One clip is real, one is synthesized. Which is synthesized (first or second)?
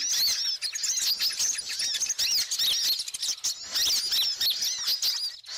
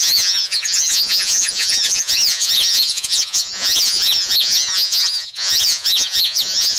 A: second